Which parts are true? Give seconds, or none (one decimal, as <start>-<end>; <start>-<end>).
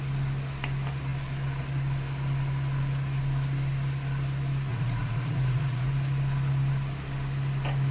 0.0-4.7; 5.9-7.9